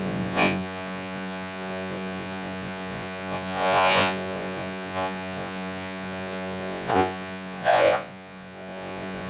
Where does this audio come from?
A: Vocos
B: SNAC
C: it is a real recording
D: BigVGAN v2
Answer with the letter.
A